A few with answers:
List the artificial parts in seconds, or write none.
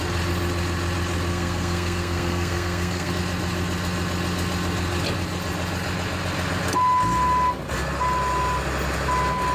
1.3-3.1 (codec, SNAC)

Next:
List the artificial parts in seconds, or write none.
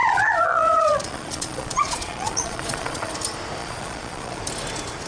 0.0-3.1 (vocoder, Vocos); 3.6-4.4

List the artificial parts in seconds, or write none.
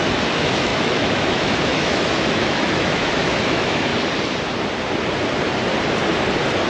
0.0-3.9 (autoencoder, DAC-VAE)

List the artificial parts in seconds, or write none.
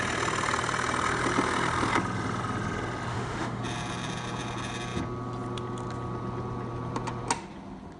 3.1-3.6 (autoencoder, DAC-VAE)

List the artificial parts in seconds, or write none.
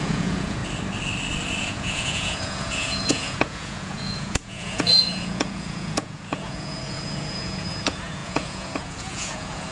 0.0-0.6 (vocoder, Vocos); 1.6-9.7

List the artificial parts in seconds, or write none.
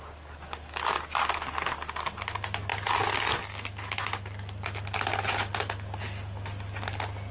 none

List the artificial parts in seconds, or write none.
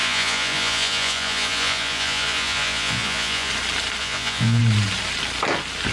0.0-3.5 (vocoder, Vocos); 4.0-4.6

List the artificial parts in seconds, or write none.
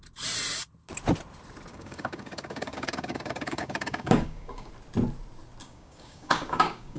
1.7-4.7 (codec, DAC); 5.6-7.0